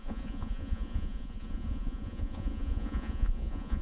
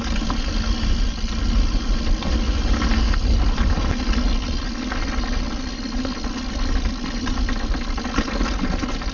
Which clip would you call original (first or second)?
second